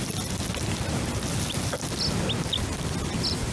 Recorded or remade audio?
recorded